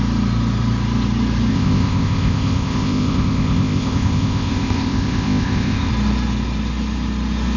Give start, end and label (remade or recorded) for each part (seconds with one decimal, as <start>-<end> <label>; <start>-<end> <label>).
0.0-1.5 recorded; 1.5-5.9 remade; 5.9-7.6 recorded